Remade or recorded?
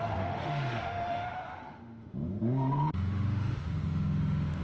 remade